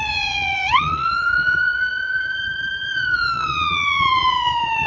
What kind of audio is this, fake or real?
fake